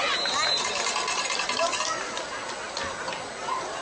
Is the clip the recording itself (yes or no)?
yes